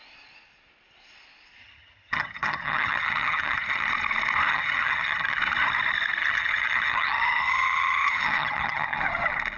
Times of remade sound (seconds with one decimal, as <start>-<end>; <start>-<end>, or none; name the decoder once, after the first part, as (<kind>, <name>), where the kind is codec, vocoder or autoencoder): 1.6-3.9 (vocoder, HiFi-GAN); 4.5-5.4; 6.2-9.0